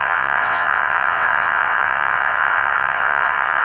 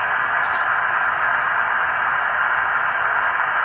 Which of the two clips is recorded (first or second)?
second